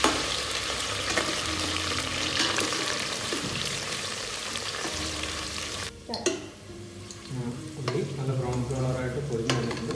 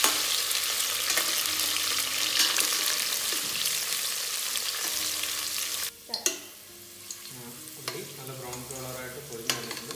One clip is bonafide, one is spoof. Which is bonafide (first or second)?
second